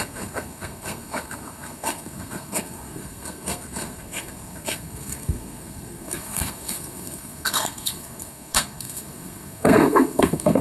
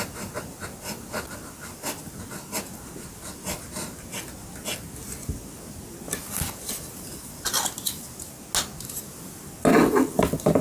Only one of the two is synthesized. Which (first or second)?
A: first